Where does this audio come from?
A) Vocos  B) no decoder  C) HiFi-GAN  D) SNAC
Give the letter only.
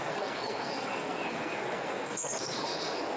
D